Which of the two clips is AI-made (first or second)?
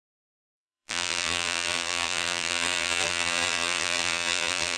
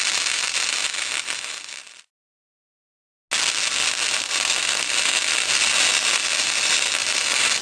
first